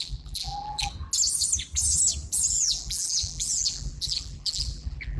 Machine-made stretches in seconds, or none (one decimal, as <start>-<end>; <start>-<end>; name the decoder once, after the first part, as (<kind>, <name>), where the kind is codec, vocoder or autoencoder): 0.0-0.9 (vocoder, BigVGAN v2); 2.5-5.2